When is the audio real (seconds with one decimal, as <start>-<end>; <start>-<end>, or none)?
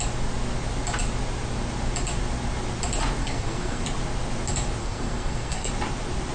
0.0-3.2; 3.8-4.8; 5.7-6.3